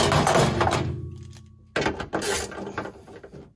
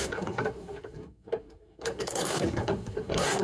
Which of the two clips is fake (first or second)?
second